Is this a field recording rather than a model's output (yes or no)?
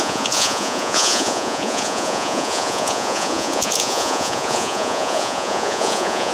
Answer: no